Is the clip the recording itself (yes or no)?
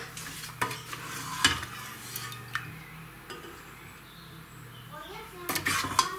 yes